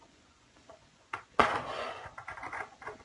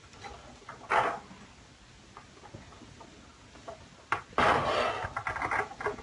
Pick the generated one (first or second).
first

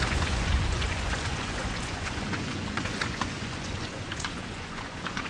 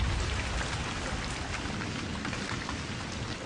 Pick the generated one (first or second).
first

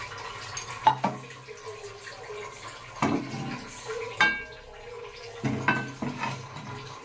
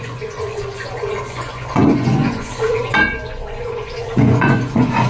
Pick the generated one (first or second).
second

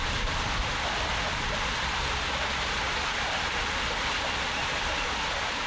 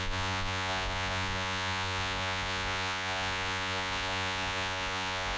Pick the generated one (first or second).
second